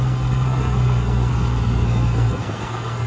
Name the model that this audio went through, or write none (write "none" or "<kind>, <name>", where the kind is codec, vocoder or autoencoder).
codec, SNAC